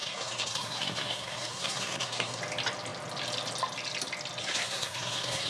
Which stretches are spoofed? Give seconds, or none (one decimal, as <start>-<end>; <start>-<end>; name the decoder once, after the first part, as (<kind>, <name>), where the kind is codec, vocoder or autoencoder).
0.0-2.4 (codec, SNAC); 4.4-5.5